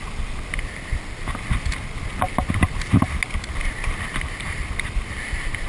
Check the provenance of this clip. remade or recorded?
recorded